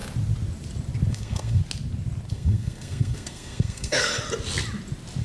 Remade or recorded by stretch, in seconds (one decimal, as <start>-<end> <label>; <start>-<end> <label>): 0.0-1.1 recorded; 1.1-1.6 remade; 1.6-2.3 recorded; 2.3-4.1 remade; 4.1-5.2 recorded